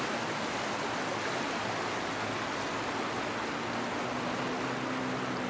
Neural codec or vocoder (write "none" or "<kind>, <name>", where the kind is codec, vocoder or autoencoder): none